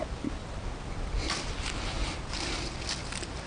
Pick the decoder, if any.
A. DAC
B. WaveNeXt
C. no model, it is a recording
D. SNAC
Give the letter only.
C